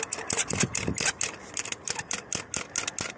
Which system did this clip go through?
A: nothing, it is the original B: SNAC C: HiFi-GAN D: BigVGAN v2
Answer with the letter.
A